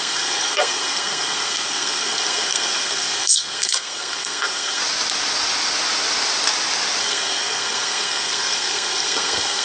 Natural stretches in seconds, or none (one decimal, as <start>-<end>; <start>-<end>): 4.8-7.0